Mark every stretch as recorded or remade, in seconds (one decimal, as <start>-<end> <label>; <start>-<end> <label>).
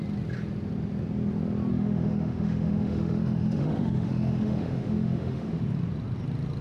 0.0-1.7 recorded; 1.7-5.6 remade; 5.6-6.6 recorded